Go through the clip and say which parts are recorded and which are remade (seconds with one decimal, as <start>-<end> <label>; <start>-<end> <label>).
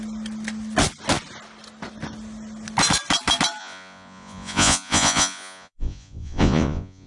0.0-3.6 recorded; 3.6-7.1 remade